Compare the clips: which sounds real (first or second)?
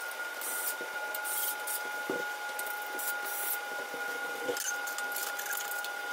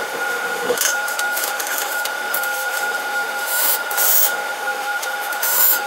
first